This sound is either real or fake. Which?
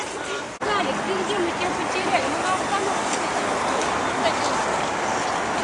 real